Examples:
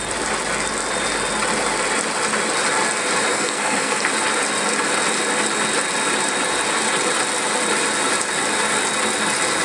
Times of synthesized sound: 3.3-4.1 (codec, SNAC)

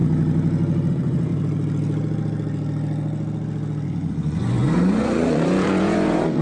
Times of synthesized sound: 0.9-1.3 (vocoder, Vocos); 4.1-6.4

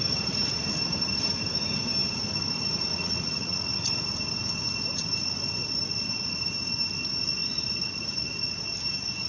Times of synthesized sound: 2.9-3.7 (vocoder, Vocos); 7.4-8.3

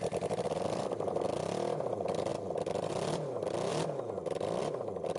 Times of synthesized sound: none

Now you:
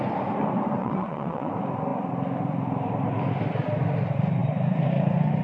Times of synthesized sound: 0.8-1.5 (vocoder, WaveNeXt)

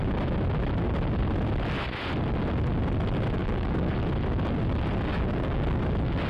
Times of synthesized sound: 3.4-3.9 (codec, DAC); 5.1-5.8

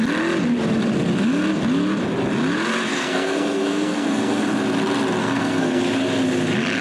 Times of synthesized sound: 2.9-4.4 (codec, SNAC); 5.2-5.8

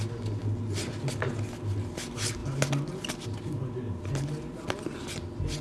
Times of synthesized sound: none